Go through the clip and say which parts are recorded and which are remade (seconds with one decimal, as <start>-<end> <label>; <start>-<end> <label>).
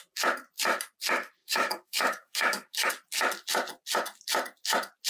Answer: 0.0-1.4 recorded; 1.4-2.9 remade; 2.9-5.1 recorded